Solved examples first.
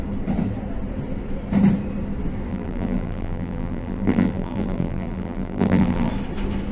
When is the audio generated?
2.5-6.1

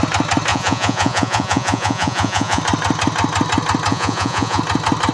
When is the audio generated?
0.5-2.6; 3.9-4.6

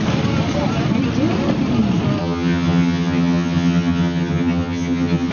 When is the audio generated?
2.2-5.3

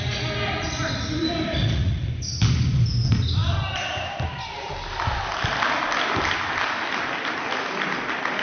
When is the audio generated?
1.6-2.1

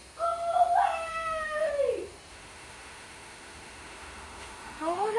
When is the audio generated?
1.1-1.7; 2.3-5.2

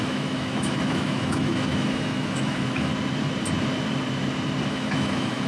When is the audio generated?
0.0-2.9; 4.7-5.5

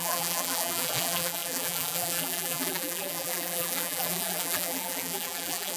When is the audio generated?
0.0-5.8